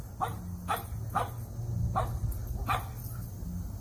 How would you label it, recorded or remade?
recorded